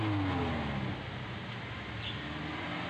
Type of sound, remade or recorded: recorded